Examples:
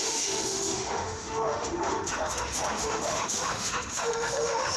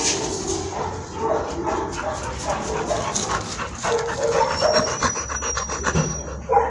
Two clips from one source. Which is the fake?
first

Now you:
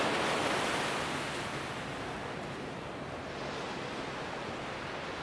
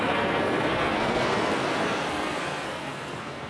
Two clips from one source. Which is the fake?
second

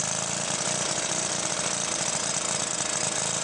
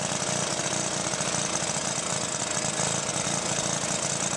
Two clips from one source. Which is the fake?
first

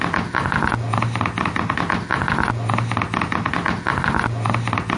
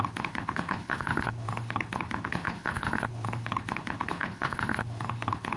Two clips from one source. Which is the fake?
second